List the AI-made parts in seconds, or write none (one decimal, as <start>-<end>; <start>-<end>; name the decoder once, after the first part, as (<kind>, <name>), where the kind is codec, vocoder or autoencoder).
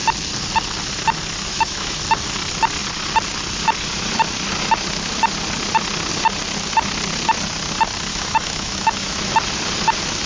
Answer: 1.5-2.0 (autoencoder, DAC-VAE); 8.1-9.3